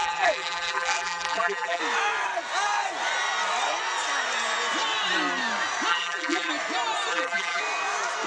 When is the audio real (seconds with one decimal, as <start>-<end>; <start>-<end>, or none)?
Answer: 1.8-5.9; 6.5-7.1; 7.6-8.3